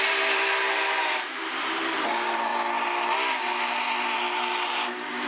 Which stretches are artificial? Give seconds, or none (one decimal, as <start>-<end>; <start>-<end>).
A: 0.0-2.5